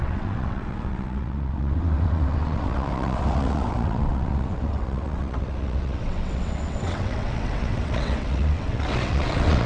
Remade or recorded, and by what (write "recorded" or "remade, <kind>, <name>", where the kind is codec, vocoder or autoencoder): remade, vocoder, WaveNeXt